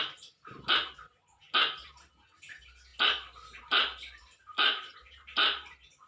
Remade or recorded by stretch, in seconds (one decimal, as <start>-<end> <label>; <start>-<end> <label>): 0.0-6.1 recorded